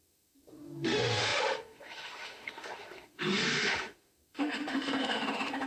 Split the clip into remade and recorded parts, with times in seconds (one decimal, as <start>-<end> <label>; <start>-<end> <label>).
0.0-5.7 remade